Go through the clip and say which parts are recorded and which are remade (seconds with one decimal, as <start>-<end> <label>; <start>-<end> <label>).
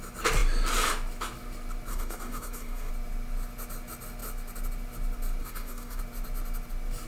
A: 0.0-1.9 recorded; 1.9-2.9 remade; 2.9-5.4 recorded; 5.4-6.0 remade; 6.0-7.1 recorded